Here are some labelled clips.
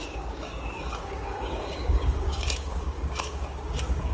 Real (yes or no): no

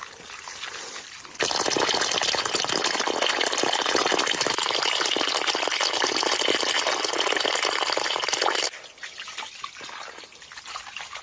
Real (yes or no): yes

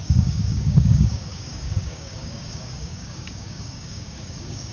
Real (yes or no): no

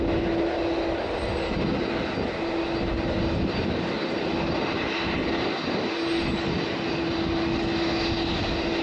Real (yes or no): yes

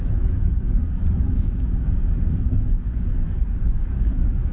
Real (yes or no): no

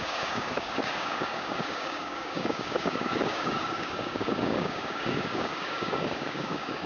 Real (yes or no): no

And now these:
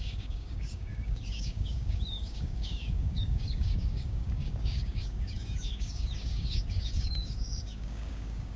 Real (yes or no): no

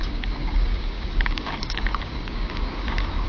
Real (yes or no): no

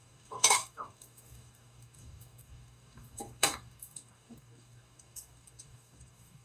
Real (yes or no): no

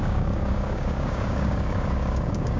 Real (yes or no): no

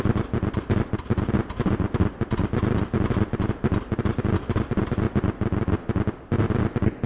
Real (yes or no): yes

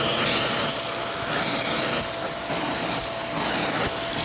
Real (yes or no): yes